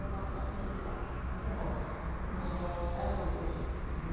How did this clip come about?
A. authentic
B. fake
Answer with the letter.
A